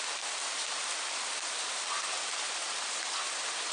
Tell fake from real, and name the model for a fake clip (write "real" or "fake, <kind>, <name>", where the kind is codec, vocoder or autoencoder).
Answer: real